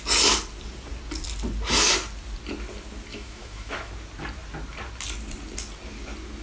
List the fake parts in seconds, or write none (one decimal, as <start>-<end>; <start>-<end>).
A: 3.1-3.9